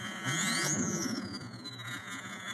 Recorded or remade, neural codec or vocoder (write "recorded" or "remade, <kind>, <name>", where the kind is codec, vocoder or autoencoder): remade, vocoder, Vocos